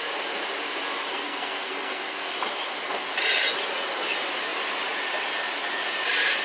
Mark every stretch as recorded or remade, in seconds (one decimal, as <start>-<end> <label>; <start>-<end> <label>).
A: 0.0-1.1 recorded; 1.1-2.3 remade; 2.3-6.4 recorded